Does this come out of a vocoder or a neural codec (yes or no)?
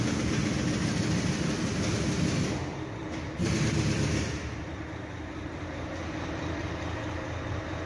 no